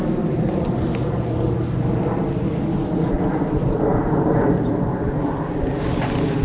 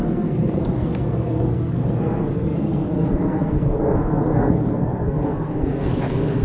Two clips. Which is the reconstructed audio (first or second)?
second